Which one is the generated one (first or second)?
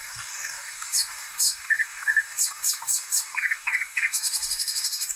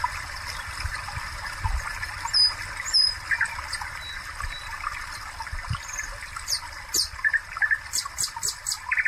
first